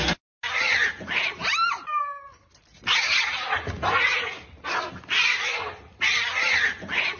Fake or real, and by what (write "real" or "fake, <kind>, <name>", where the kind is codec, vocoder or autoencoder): real